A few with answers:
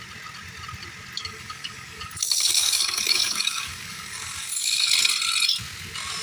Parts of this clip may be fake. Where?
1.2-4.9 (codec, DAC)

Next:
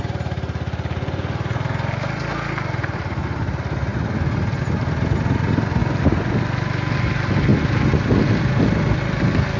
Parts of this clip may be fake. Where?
none

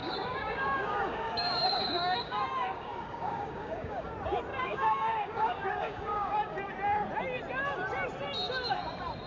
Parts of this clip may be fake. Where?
0.0-4.1 (codec, DAC); 4.5-6.7